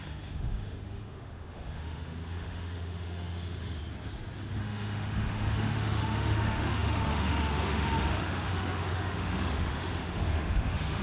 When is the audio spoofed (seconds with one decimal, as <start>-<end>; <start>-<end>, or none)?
0.0-3.8; 4.6-11.0